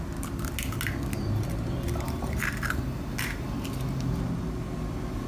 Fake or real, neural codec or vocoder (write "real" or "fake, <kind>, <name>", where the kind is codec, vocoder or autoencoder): real